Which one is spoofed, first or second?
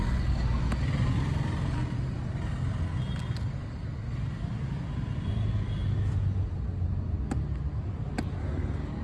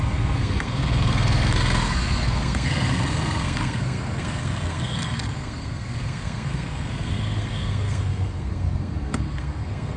second